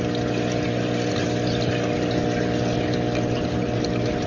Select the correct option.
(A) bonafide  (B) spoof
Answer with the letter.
A